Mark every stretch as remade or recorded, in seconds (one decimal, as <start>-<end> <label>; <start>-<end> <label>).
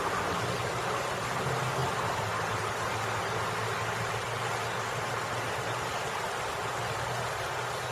0.0-7.9 recorded